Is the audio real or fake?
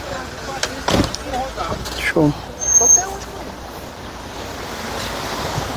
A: real